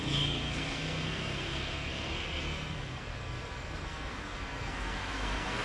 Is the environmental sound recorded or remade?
remade